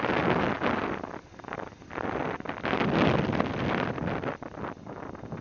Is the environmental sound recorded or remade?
recorded